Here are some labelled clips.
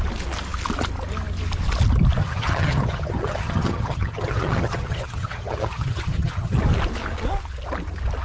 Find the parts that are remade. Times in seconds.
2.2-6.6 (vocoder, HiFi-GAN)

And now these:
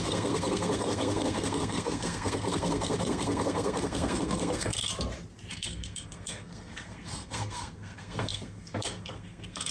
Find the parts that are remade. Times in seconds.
0.0-4.9 (codec, SNAC); 5.5-9.7

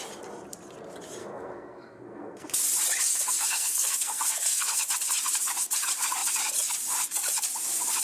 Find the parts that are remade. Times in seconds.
1.2-2.5 (codec, SNAC); 3.1-4.8

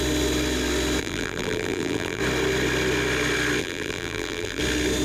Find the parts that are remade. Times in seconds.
1.0-2.2 (vocoder, BigVGAN v2); 3.6-4.6

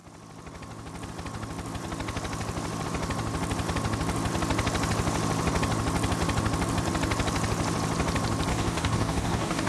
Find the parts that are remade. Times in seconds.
8.5-9.7 (codec, DAC)